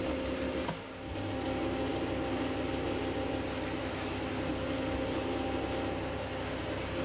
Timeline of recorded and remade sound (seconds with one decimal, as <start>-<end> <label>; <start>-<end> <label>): 0.0-3.8 recorded; 3.8-4.3 remade; 4.3-7.0 recorded